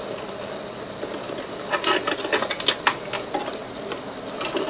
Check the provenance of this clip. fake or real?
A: real